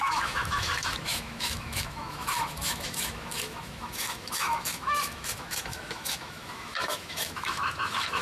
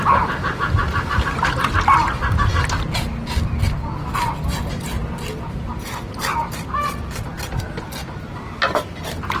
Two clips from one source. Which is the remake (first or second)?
first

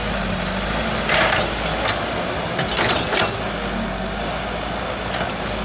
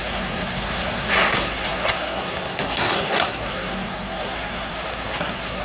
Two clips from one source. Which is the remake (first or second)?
second